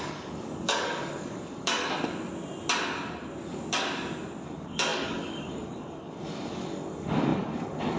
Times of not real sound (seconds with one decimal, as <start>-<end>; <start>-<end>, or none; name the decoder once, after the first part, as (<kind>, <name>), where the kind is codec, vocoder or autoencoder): 0.0-1.8 (codec, DAC); 4.4-8.0